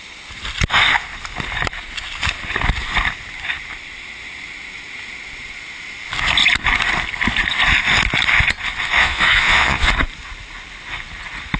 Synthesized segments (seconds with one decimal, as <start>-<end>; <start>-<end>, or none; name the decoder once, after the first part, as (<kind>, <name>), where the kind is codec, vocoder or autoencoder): 9.0-9.9 (vocoder, Vocos)

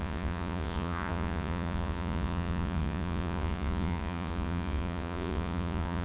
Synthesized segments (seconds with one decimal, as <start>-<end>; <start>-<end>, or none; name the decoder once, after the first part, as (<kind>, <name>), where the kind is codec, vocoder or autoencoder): 0.0-6.0 (vocoder, Vocos)

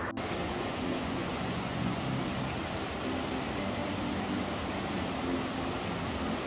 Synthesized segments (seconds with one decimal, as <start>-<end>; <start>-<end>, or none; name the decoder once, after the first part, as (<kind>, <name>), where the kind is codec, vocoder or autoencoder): 0.4-2.0 (vocoder, Vocos)

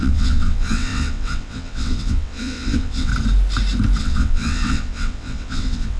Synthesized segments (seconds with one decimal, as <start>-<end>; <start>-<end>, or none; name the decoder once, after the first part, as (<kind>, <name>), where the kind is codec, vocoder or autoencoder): 0.0-3.1 (vocoder, WaveNeXt); 4.0-6.0